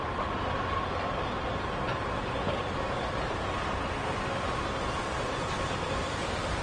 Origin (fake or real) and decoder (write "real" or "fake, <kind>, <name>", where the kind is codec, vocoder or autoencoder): real